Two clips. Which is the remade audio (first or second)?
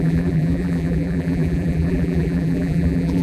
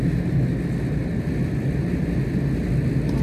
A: first